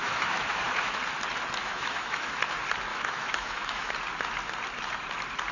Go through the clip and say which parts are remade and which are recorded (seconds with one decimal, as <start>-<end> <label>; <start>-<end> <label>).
0.0-1.0 remade; 1.0-1.6 recorded; 1.6-2.3 remade; 2.3-2.9 recorded; 2.9-3.9 remade; 3.9-5.5 recorded